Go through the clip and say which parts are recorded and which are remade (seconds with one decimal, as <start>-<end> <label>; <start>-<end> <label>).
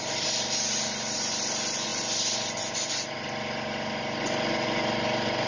0.0-5.5 recorded